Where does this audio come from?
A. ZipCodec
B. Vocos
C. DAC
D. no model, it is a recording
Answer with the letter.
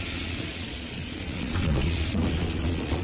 B